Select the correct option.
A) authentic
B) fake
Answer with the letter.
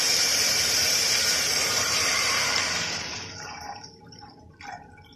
B